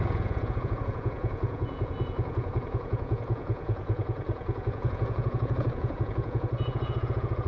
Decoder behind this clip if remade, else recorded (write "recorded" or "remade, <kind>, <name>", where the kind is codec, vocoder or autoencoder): remade, vocoder, Vocos